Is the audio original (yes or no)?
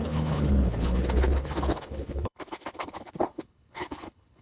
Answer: no